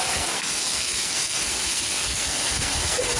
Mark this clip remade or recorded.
remade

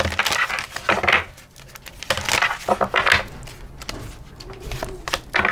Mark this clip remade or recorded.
recorded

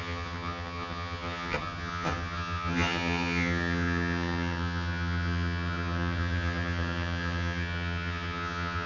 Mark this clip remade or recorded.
remade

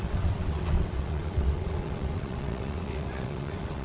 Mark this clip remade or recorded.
remade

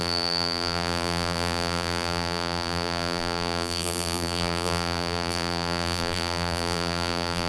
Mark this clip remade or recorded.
remade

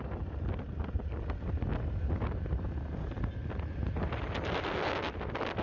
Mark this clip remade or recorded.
recorded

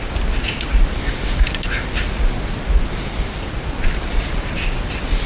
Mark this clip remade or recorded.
recorded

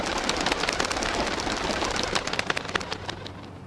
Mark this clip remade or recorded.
recorded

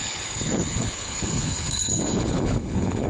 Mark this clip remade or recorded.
remade